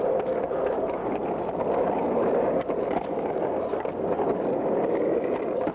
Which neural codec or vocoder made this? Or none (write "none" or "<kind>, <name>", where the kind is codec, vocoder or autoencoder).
none